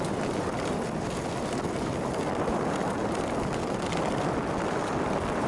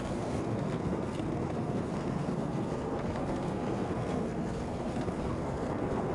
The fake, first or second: second